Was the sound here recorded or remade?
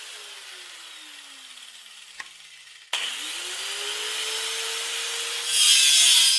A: recorded